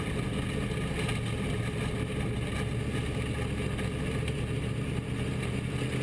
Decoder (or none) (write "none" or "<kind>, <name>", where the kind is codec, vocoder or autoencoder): none